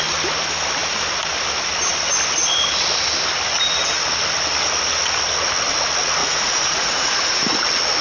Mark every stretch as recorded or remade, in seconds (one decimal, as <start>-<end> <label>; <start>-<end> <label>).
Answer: 0.0-6.2 recorded; 6.2-7.6 remade; 7.6-8.0 recorded